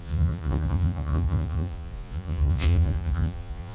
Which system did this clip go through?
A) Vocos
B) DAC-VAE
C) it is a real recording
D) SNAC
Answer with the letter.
A